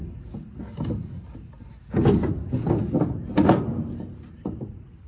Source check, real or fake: real